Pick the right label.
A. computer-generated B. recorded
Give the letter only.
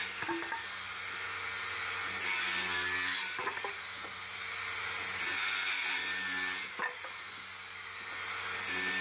B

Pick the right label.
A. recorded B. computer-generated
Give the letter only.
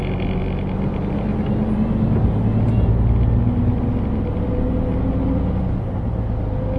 A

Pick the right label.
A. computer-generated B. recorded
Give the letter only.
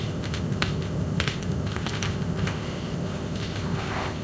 A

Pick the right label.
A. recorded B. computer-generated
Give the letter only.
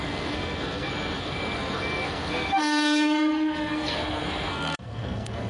B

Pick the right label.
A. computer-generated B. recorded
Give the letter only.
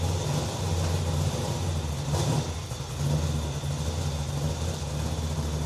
B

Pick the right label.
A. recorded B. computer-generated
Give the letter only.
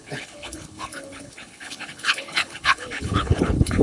B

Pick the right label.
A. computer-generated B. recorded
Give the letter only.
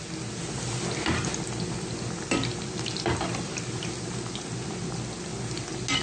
B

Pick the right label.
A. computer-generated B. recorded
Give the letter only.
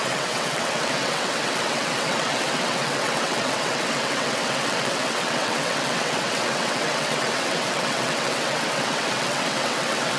A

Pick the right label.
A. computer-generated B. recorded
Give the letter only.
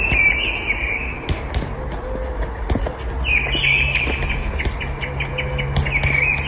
B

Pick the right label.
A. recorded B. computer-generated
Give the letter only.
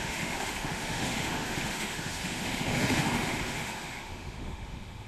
B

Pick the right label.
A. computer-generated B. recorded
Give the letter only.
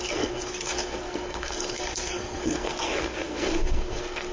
A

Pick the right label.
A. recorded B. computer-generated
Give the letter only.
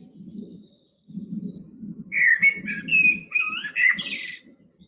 A